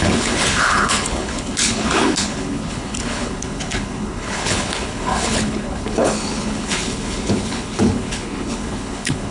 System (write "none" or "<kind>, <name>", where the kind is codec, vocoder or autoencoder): codec, HILCodec